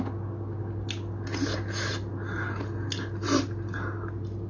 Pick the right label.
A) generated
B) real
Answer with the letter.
B